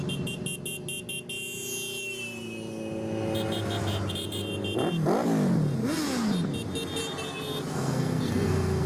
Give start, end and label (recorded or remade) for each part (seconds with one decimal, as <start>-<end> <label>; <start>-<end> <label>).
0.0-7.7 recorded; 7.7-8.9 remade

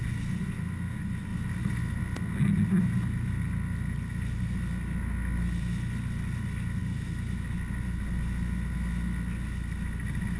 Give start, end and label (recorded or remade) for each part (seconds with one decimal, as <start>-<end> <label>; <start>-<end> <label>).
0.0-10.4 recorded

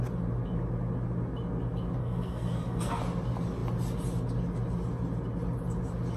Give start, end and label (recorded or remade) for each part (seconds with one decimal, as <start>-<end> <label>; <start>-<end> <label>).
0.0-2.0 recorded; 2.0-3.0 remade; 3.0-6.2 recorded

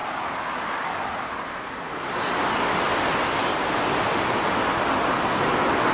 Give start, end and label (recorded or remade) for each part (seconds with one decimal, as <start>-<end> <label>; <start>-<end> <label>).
0.0-5.9 recorded

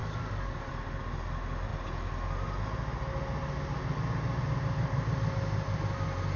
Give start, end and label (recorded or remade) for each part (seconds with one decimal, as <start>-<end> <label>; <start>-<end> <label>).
0.0-0.7 remade; 0.7-6.4 recorded

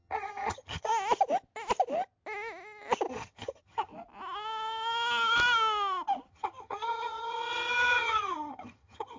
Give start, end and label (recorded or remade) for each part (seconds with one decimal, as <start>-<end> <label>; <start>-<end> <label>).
0.0-0.9 remade; 0.9-3.1 recorded; 3.1-3.9 remade; 3.9-6.3 recorded; 6.3-9.2 remade